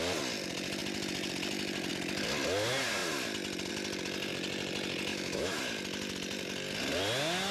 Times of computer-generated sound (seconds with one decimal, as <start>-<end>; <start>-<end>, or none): 5.1-5.6